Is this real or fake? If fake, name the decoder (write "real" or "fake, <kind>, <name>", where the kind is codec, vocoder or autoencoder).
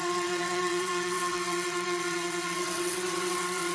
fake, vocoder, WaveNeXt